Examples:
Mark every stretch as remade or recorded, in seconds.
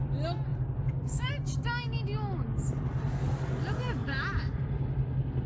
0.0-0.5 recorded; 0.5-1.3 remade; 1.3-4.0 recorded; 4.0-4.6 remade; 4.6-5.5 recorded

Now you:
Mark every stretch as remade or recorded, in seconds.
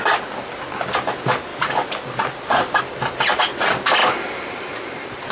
0.0-1.5 recorded; 1.5-2.8 remade; 2.8-4.0 recorded; 4.0-5.3 remade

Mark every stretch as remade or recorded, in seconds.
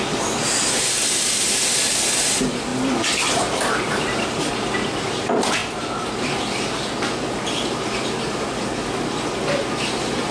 0.0-2.7 recorded; 2.7-4.5 remade; 4.5-10.3 recorded